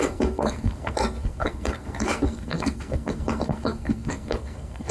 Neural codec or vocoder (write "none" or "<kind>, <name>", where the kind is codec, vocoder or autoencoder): codec, SNAC